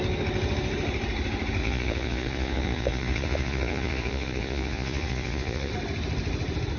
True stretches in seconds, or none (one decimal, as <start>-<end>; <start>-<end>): 0.0-1.6; 5.7-6.8